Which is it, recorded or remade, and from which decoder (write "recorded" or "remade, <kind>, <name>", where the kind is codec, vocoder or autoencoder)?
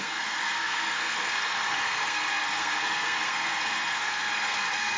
remade, codec, SNAC